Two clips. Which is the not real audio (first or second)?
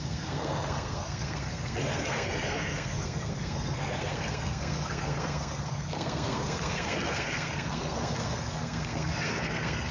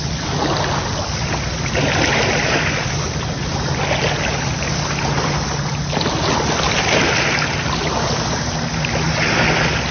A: first